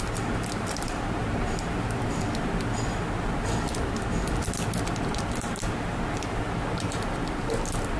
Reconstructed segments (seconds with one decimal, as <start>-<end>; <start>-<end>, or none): none